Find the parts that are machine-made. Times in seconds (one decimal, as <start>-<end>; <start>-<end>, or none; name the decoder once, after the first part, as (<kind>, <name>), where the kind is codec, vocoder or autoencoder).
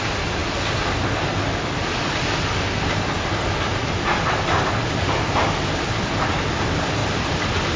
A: none